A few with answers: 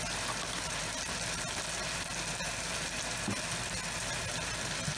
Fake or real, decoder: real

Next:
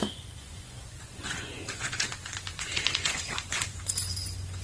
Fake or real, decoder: fake, vocoder, Vocos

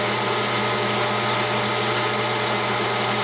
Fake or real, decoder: real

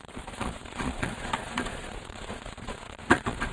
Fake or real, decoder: fake, vocoder, Vocos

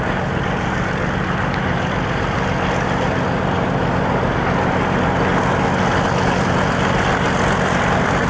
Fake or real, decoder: real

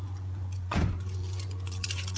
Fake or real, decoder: fake, vocoder, Vocos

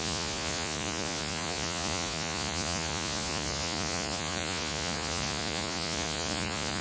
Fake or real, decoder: fake, vocoder, Vocos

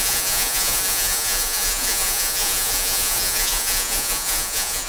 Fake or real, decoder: fake, vocoder, Vocos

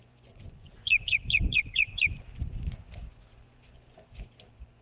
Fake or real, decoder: fake, vocoder, Vocos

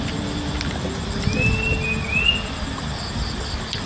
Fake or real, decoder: real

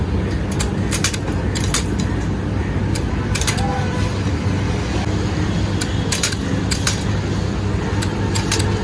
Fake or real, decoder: real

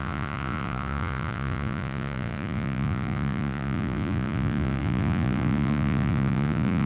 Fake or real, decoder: fake, vocoder, Vocos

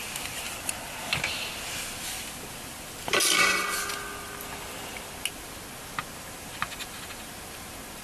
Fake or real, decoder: real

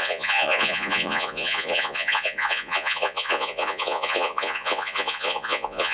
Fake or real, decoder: fake, vocoder, Vocos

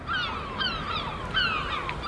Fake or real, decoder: real